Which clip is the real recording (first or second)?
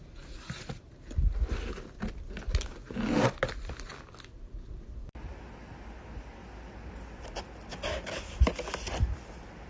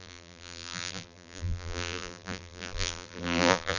first